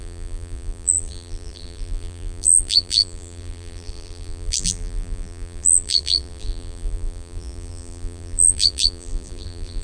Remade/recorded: remade